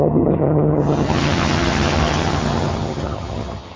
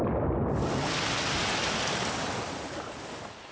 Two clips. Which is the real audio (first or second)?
second